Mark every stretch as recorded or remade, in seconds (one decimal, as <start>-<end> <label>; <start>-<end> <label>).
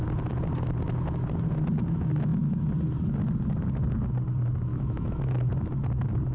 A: 0.0-4.7 recorded; 4.7-5.5 remade; 5.5-6.3 recorded